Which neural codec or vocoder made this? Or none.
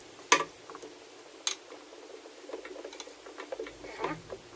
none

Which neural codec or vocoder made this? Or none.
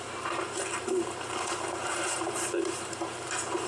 none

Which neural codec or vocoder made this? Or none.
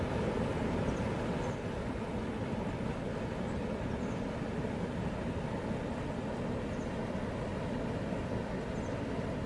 none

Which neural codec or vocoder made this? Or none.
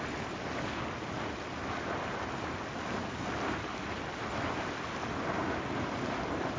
none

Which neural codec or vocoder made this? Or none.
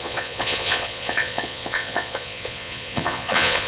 vocoder, Vocos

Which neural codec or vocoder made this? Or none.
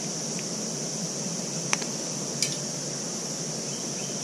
none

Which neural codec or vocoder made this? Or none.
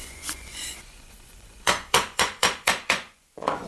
vocoder, Vocos